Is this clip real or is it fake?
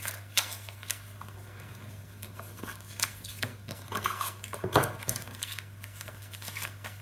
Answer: fake